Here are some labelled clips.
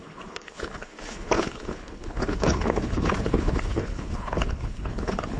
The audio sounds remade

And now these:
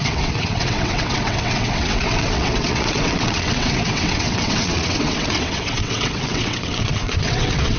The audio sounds remade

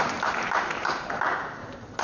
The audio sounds remade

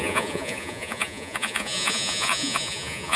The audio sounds remade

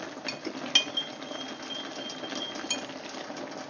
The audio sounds recorded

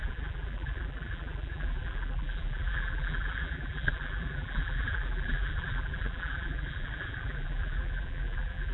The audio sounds remade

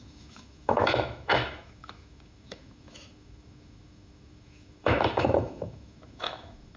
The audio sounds remade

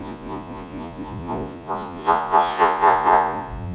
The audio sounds remade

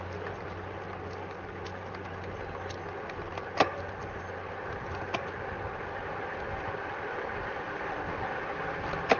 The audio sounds recorded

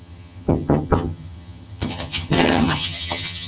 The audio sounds remade